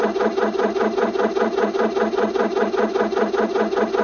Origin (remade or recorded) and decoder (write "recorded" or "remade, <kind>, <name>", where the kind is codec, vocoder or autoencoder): recorded